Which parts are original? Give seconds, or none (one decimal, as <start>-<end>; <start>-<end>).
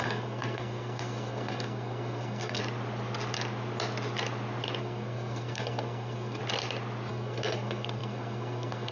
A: 2.6-4.8; 6.4-7.1